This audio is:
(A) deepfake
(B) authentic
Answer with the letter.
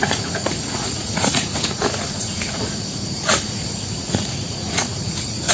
A